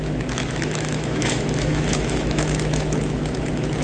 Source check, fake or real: fake